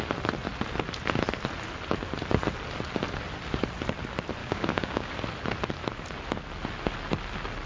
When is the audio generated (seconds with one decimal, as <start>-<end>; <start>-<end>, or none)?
4.4-5.1

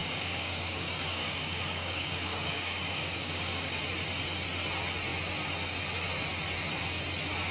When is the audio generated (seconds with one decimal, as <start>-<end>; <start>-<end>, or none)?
0.0-3.8